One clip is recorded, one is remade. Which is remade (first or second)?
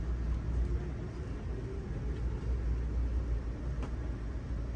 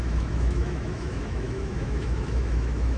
second